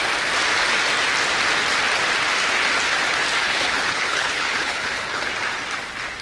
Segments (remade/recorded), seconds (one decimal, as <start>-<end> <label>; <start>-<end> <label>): 0.0-3.4 recorded; 3.4-5.2 remade; 5.2-6.2 recorded